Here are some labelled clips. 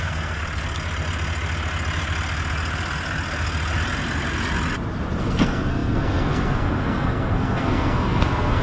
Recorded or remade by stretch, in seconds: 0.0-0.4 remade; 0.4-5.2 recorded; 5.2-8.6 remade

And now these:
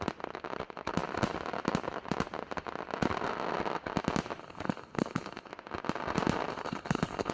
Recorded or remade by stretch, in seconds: 0.0-4.4 recorded; 4.4-5.5 remade; 5.5-6.5 recorded; 6.5-7.3 remade

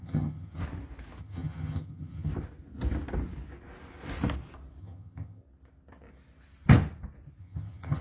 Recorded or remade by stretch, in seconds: 0.0-0.6 remade; 0.6-1.2 recorded; 1.2-2.3 remade; 2.3-4.8 recorded; 4.8-5.4 remade; 5.4-7.4 recorded; 7.4-8.0 remade

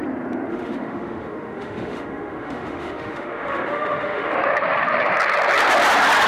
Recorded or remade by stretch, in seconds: 0.0-0.5 recorded; 0.5-4.3 remade; 4.3-6.3 recorded

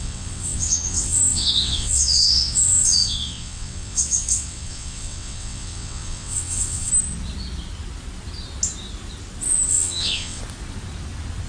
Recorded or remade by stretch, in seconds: 0.0-6.9 remade; 6.9-9.7 recorded; 9.7-10.4 remade; 10.4-11.5 recorded

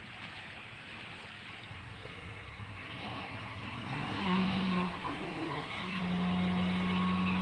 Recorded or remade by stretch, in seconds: 0.0-1.7 recorded; 1.7-6.0 remade; 6.0-7.4 recorded

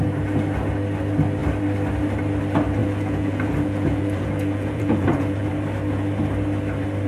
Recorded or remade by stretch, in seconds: 0.0-2.8 recorded; 2.8-5.5 remade; 5.5-7.1 recorded

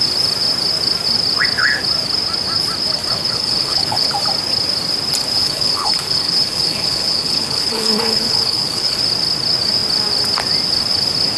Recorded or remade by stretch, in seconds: 0.0-3.1 recorded; 3.1-4.1 remade; 4.1-5.4 recorded; 5.4-9.0 remade; 9.0-11.4 recorded